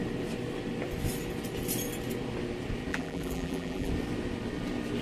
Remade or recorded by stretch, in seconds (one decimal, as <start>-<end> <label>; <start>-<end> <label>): 0.0-2.9 recorded; 2.9-3.9 remade; 3.9-5.0 recorded